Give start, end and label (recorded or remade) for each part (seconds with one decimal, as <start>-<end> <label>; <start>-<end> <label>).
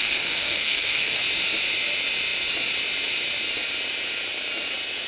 0.0-1.2 remade; 1.2-5.1 recorded